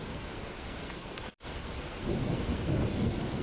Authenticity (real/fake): fake